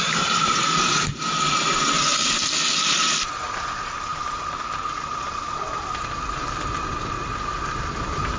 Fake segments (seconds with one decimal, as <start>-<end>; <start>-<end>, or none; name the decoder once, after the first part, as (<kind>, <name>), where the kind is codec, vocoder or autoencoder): 0.0-2.1 (vocoder, BigVGAN v2); 2.8-8.4